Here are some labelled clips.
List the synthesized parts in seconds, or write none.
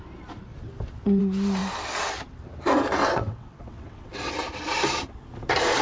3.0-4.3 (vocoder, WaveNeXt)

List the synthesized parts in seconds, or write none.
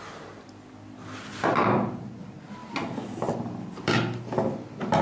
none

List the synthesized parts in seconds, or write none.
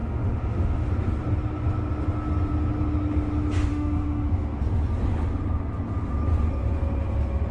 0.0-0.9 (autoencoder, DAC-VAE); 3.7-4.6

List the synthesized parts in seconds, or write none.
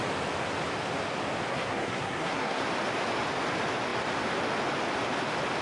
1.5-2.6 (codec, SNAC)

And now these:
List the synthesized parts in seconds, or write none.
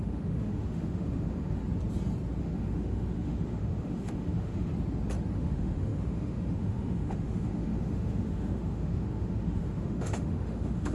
0.0-1.6 (autoencoder, DAC-VAE); 2.4-4.7; 5.3-10.9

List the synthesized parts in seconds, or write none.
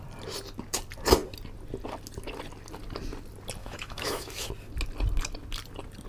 3.6-4.5 (autoencoder, DAC-VAE)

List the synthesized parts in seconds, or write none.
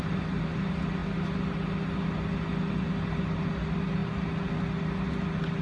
none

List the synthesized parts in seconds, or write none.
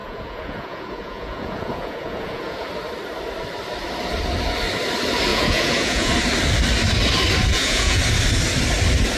0.0-2.7 (vocoder, Vocos); 5.3-6.1; 7.5-8.0